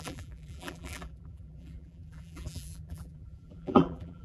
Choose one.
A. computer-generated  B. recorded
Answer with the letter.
A